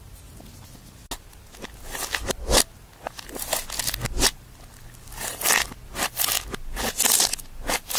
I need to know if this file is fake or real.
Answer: real